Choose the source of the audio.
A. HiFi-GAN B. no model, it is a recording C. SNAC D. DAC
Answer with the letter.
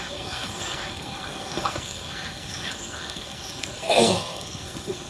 C